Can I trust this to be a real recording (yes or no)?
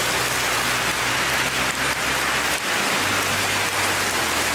yes